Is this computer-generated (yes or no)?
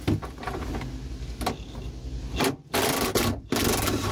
no